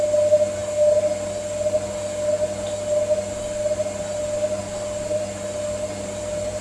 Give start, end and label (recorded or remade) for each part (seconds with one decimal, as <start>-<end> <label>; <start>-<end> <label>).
0.0-6.6 recorded